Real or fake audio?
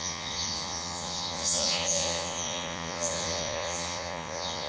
fake